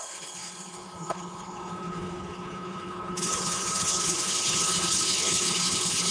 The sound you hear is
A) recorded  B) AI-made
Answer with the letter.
B